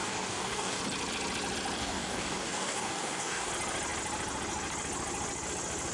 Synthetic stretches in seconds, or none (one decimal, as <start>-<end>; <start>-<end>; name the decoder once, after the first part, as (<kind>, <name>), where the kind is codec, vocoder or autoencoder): 0.0-0.8 (codec, DAC); 1.8-3.5